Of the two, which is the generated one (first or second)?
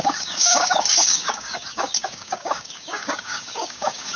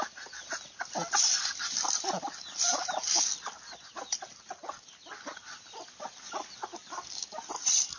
first